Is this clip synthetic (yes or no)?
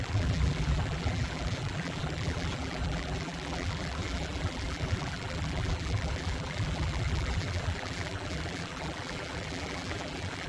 yes